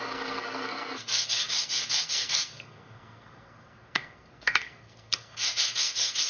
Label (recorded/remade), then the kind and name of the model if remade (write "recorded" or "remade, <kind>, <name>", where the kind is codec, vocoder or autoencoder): remade, codec, SNAC